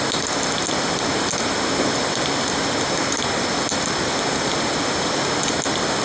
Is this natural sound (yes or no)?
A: yes